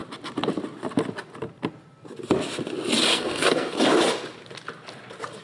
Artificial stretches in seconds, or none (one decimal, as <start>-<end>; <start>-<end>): 3.1-3.8